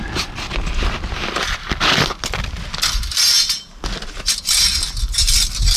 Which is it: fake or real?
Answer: real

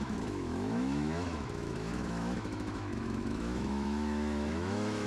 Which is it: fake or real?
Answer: fake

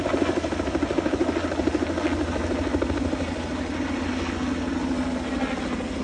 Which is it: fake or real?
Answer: real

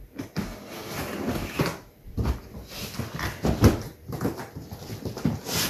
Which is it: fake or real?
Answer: real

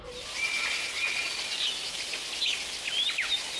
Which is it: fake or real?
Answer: real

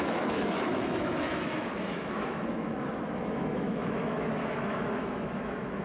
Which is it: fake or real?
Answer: fake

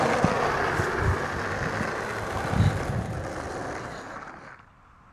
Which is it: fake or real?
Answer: real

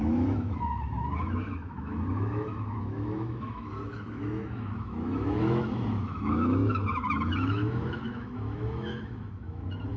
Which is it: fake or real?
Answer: fake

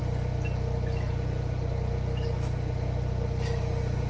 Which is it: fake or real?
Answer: real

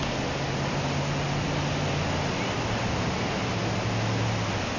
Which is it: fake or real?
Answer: real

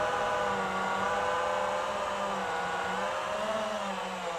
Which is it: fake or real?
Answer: real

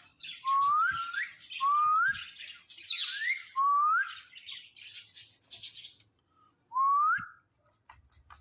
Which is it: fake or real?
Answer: real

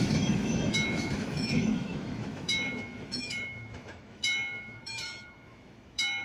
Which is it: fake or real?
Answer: fake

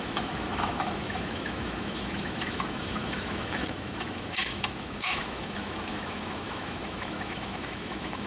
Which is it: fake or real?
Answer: fake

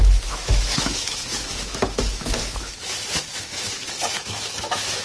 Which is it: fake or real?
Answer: fake